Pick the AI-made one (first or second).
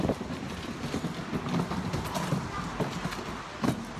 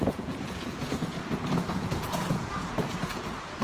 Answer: second